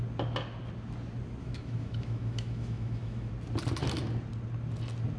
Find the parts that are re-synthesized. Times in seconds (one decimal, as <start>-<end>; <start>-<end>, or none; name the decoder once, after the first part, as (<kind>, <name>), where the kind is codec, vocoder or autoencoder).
1.4-3.3 (autoencoder, DAC-VAE)